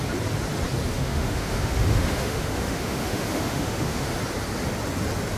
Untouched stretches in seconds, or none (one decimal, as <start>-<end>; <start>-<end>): 0.0-0.9; 4.1-5.4